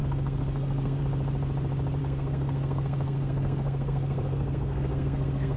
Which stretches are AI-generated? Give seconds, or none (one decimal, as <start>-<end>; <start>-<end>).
0.0-1.0; 2.0-5.6